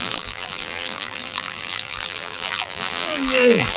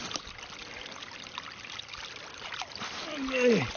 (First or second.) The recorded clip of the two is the second